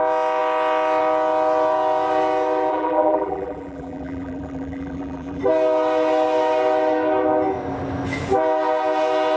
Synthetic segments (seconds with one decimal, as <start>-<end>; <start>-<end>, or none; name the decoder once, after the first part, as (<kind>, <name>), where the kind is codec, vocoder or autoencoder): 2.7-5.4 (vocoder, BigVGAN v2)